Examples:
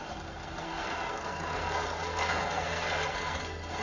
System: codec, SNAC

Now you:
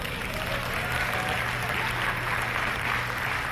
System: none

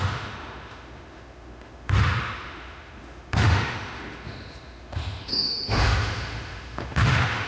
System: autoencoder, DAC-VAE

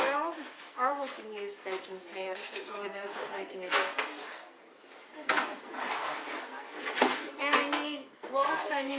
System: codec, SNAC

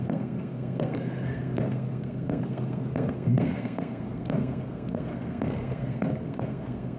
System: codec, SNAC